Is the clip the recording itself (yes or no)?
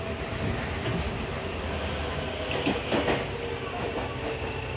yes